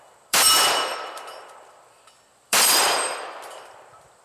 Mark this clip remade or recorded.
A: remade